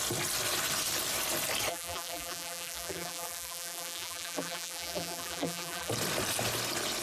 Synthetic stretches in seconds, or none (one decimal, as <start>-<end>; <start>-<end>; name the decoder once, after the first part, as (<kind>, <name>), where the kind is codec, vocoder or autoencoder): 1.7-5.9 (vocoder, BigVGAN v2)